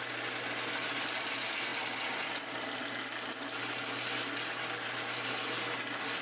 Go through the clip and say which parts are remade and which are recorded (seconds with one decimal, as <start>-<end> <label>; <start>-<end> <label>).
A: 0.0-6.2 recorded